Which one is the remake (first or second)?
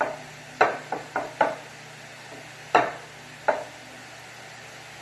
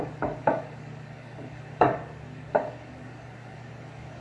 second